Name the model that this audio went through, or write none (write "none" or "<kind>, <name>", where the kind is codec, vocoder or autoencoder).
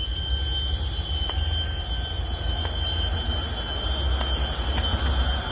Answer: none